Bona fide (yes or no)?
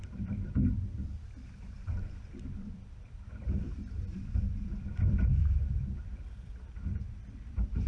no